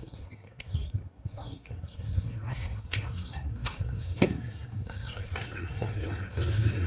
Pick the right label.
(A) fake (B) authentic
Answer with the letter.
A